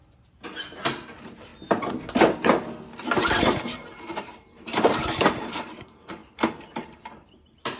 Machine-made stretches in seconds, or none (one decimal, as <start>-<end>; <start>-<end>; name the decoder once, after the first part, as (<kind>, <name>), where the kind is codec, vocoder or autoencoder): 0.0-1.5 (vocoder, BigVGAN v2); 3.4-7.8